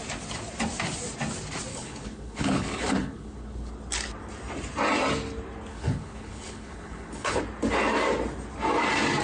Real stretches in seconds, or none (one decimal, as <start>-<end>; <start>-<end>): 0.0-1.7; 3.7-5.7; 7.4-9.2